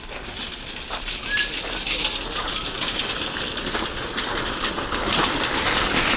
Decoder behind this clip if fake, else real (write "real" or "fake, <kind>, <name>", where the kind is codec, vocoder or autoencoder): real